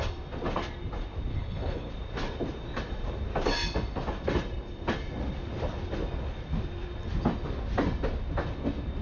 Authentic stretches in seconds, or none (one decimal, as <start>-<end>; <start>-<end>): 0.0-1.3; 1.9-9.0